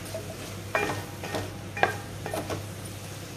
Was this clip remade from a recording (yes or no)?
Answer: no